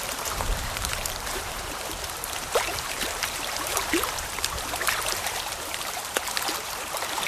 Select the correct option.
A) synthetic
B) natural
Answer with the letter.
A